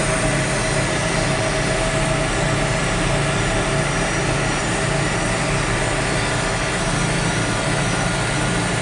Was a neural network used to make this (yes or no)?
no